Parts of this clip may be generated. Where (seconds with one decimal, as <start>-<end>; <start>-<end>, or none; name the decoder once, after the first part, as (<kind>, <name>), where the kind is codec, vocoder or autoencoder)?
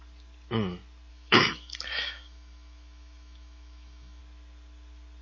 1.1-4.2 (autoencoder, DAC-VAE)